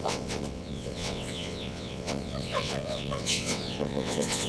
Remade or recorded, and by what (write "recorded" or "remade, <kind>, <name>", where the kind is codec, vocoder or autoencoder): remade, vocoder, WaveNeXt